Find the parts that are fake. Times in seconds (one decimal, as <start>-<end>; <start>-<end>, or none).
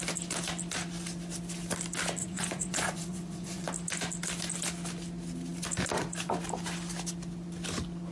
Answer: 2.2-3.7